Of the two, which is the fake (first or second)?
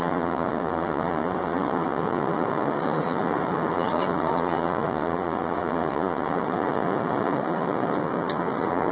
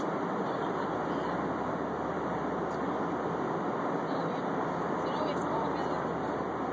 first